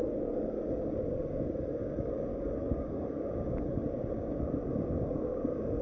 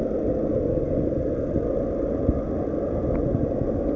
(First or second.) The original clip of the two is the second